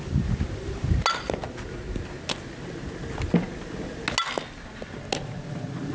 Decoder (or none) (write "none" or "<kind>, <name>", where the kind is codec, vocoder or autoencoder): none